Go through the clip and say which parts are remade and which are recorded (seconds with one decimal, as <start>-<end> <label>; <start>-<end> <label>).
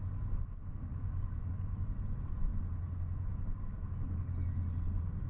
0.0-0.9 recorded; 0.9-1.5 remade; 1.5-5.3 recorded